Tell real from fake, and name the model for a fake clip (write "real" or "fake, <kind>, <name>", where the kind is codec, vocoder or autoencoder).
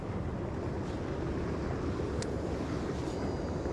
real